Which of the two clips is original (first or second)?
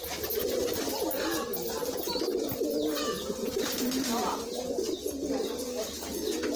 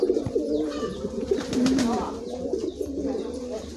first